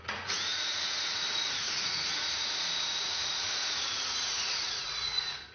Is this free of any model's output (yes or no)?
no